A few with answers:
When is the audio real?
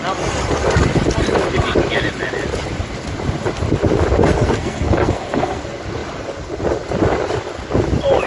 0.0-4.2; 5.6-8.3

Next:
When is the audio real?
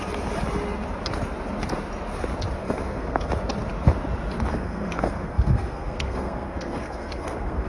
0.0-2.6; 3.3-4.5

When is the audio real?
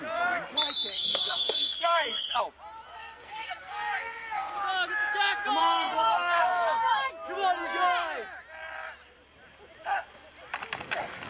0.0-1.0; 2.4-2.9; 4.6-5.6; 7.1-11.3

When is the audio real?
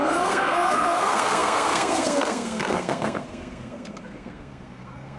none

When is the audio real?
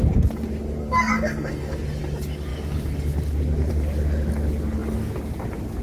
0.0-0.8; 1.8-5.8